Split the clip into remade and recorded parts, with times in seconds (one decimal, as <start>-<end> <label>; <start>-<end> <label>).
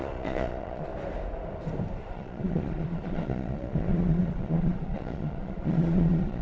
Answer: 0.0-0.9 remade; 0.9-2.1 recorded; 2.1-6.4 remade